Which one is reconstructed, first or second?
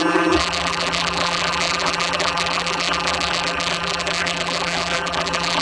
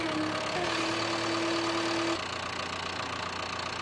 first